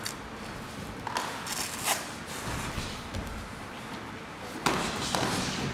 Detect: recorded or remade recorded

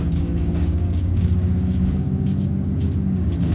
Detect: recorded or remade remade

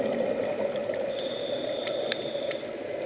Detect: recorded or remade recorded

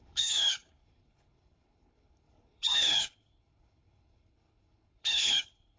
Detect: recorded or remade remade